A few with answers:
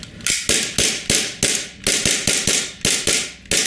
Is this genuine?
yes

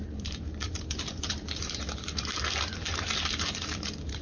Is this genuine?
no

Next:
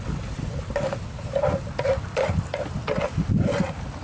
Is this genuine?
yes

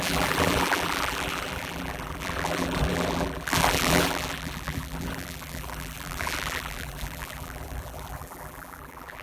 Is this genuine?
no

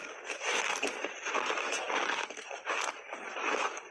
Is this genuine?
yes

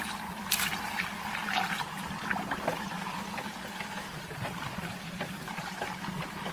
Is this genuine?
yes